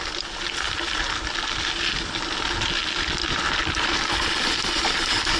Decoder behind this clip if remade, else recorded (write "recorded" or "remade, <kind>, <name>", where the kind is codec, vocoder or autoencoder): recorded